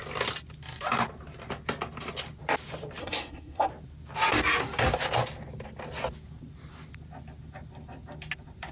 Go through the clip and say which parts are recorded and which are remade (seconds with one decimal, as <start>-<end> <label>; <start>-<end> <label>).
0.0-3.0 recorded; 3.0-3.7 remade; 3.7-8.7 recorded

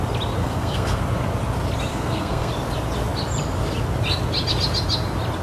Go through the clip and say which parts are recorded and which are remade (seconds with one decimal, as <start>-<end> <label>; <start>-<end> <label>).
0.0-0.4 recorded; 0.4-1.0 remade; 1.0-1.9 recorded; 1.9-2.5 remade; 2.5-5.4 recorded

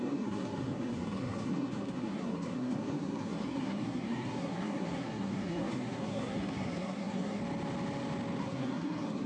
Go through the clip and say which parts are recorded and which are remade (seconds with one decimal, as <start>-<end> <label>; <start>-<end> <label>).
0.0-7.4 remade; 7.4-8.4 recorded; 8.4-9.3 remade

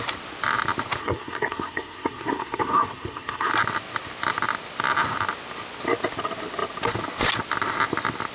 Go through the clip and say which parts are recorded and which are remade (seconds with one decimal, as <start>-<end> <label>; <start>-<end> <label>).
0.0-1.0 recorded; 1.0-3.5 remade; 3.5-8.3 recorded

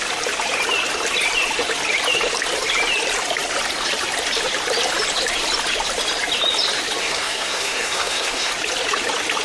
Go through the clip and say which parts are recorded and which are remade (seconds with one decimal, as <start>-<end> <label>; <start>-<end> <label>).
0.0-7.0 recorded; 7.0-8.5 remade; 8.5-9.4 recorded

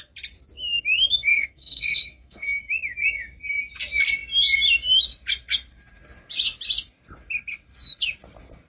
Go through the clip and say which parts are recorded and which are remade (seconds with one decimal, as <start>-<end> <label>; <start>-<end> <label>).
0.0-1.1 recorded; 1.1-2.6 remade; 2.6-8.7 recorded

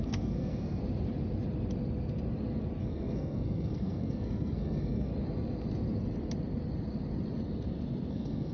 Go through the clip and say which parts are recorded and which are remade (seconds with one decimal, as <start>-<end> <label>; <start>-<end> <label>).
0.0-0.8 remade; 0.8-2.8 recorded; 2.8-5.1 remade; 5.1-8.1 recorded; 8.1-8.5 remade

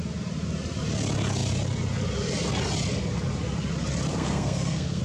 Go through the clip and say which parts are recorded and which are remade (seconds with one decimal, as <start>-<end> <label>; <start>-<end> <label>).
0.0-4.1 recorded; 4.1-5.0 remade